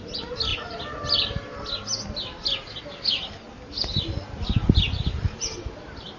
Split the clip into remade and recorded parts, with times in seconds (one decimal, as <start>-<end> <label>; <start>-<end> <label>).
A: 0.0-6.2 recorded